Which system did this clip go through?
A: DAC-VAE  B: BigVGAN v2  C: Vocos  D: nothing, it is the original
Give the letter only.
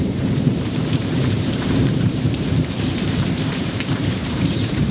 B